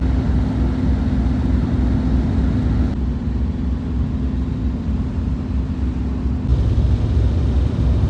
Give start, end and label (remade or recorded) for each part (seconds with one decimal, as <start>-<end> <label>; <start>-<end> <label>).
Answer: 0.0-8.1 recorded